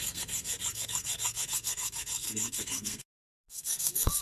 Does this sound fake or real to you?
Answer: fake